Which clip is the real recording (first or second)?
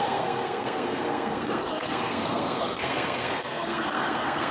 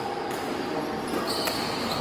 second